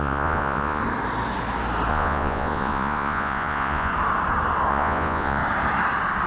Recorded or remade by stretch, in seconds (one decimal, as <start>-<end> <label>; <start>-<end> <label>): 0.0-0.8 remade; 0.8-1.9 recorded; 1.9-3.9 remade; 3.9-4.7 recorded; 4.7-5.4 remade; 5.4-6.3 recorded